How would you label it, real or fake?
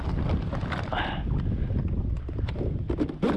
real